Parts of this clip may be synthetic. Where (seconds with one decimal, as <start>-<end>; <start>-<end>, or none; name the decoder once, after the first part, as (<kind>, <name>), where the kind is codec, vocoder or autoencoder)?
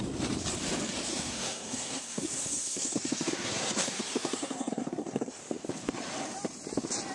1.1-5.4 (codec, SNAC)